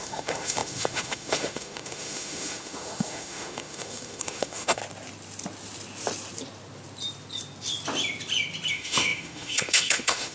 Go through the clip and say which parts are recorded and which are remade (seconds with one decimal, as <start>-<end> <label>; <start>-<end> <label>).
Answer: 0.0-4.8 remade; 4.8-8.7 recorded; 8.7-10.3 remade